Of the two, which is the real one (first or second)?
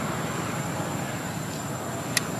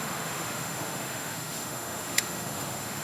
first